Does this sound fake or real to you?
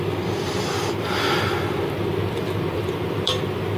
fake